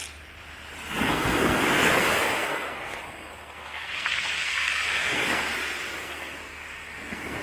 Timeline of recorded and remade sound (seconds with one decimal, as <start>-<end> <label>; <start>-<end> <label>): 0.0-1.0 recorded; 1.0-5.5 remade; 5.5-6.0 recorded; 6.0-7.4 remade